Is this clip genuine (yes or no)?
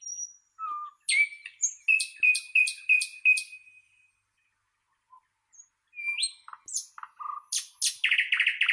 yes